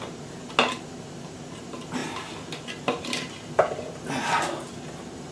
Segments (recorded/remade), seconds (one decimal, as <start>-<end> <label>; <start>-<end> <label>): 0.0-5.3 recorded